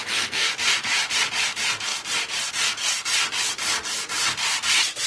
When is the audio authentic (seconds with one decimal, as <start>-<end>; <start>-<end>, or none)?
0.5-5.1